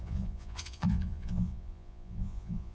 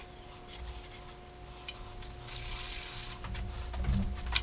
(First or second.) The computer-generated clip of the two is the first